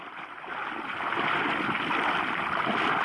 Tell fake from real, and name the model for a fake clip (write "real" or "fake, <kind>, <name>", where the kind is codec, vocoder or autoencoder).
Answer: fake, vocoder, BigVGAN v2